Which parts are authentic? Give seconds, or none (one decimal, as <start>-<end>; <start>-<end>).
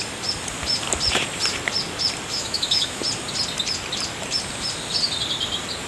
0.0-2.3; 3.0-5.9